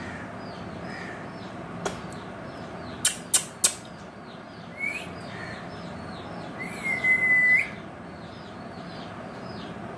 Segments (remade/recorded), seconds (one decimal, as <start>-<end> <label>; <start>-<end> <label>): 0.0-10.0 recorded